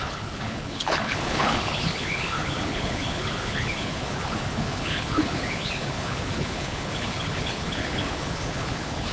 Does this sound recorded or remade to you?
remade